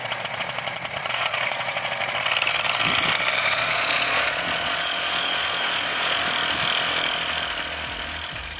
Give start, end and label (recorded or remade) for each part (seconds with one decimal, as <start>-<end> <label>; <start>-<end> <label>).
0.0-1.9 remade; 1.9-3.4 recorded; 3.4-6.2 remade; 6.2-8.6 recorded